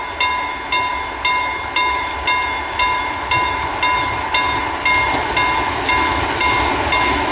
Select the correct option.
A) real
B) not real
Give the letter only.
A